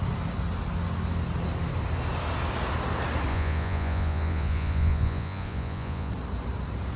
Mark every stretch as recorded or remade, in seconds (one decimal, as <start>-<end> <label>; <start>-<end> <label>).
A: 0.0-3.3 recorded; 3.3-6.1 remade; 6.1-7.0 recorded